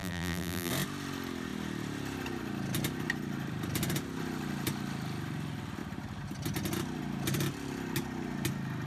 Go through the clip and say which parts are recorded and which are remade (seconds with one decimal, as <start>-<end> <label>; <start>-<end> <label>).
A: 0.0-0.7 remade; 0.7-8.9 recorded